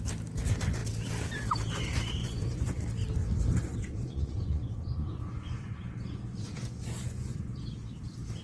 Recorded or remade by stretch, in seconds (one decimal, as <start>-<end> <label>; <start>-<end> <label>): 0.0-2.2 recorded; 2.2-2.8 remade; 2.8-3.7 recorded; 3.7-7.6 remade; 7.6-8.4 recorded